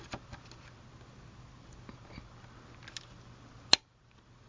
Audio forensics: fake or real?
real